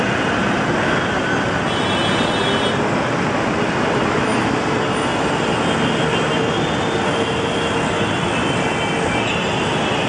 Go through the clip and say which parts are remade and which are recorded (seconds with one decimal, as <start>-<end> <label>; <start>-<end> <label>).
0.0-10.1 recorded